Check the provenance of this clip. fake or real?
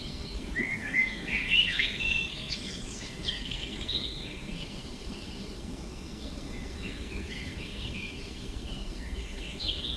fake